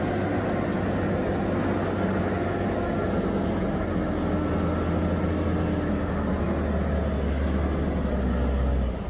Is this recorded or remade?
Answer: recorded